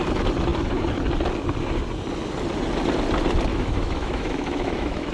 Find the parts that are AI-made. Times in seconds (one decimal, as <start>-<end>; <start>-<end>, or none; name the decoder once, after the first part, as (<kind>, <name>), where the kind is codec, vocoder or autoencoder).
3.5-5.1 (autoencoder, DAC-VAE)